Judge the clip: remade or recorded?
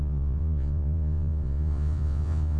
remade